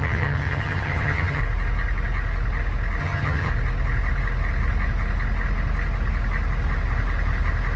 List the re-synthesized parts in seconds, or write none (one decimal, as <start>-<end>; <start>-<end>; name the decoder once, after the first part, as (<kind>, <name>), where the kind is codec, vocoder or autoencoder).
0.0-1.4 (vocoder, HiFi-GAN); 3.0-3.5